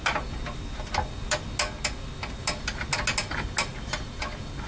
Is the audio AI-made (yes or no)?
no